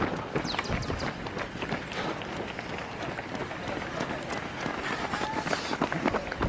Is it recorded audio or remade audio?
recorded